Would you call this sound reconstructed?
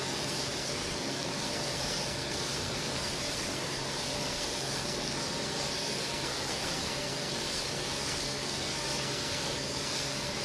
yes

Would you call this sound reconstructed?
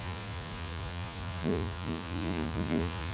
yes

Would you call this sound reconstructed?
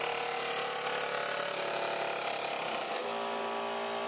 no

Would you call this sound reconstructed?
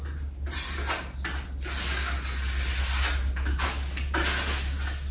no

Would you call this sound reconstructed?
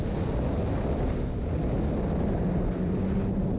no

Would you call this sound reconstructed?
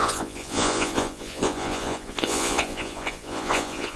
yes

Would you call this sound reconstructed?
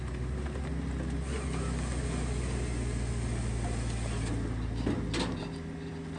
no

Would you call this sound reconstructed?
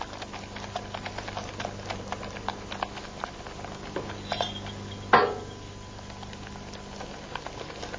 no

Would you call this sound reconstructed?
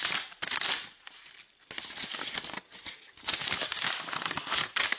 no